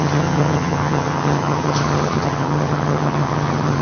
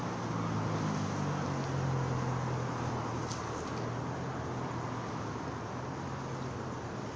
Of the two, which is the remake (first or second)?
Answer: first